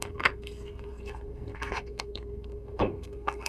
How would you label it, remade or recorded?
remade